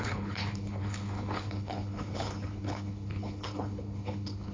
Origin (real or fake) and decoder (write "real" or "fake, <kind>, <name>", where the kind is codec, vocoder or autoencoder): fake, codec, HILCodec